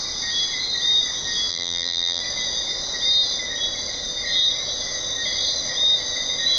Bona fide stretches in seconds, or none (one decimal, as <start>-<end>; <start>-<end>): 0.0-1.5; 2.2-6.6